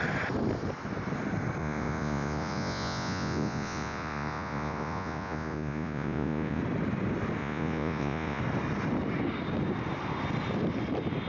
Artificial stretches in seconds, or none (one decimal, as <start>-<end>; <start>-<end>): 1.6-6.6; 7.4-8.4